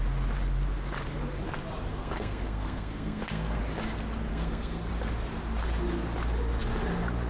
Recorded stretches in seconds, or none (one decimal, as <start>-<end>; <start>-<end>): 0.0-1.9; 3.6-4.3; 4.9-7.3